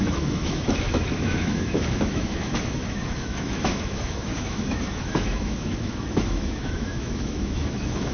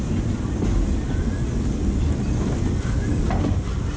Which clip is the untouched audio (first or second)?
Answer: second